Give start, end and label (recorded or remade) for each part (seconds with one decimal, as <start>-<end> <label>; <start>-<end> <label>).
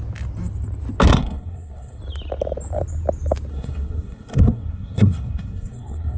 0.0-1.1 recorded; 1.1-2.0 remade; 2.0-3.5 recorded; 3.5-6.2 remade